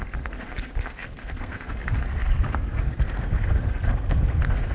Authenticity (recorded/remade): remade